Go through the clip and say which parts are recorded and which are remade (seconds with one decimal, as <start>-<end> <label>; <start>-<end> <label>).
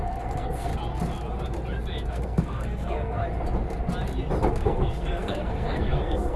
0.0-0.7 remade; 0.7-2.1 recorded; 2.1-3.2 remade; 3.2-4.5 recorded; 4.5-6.4 remade